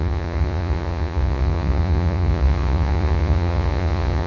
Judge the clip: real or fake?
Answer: fake